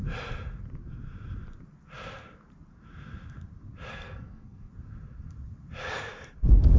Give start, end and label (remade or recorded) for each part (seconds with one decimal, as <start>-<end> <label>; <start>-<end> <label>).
0.0-3.9 recorded; 3.9-4.7 remade; 4.7-6.8 recorded